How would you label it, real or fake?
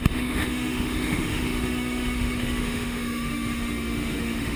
fake